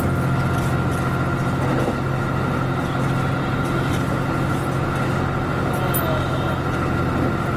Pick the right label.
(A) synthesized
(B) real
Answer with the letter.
B